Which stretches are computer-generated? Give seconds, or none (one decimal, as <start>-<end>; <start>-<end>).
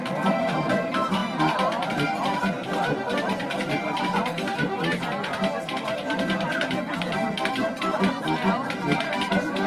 none